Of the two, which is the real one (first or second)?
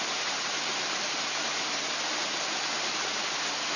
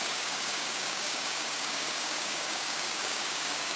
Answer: first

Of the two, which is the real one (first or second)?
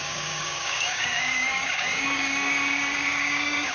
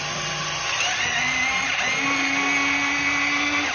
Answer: second